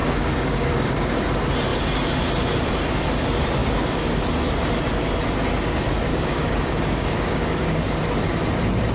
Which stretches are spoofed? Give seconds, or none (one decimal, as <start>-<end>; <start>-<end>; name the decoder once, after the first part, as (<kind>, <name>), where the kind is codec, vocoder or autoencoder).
0.0-1.2 (codec, DAC); 3.6-4.3; 6.1-8.0